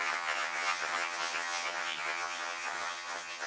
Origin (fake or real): fake